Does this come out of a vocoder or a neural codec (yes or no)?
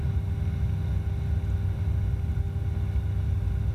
no